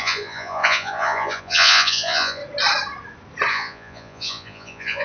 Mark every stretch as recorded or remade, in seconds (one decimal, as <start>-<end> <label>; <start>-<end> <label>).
0.0-2.4 remade; 2.4-3.5 recorded; 3.5-5.0 remade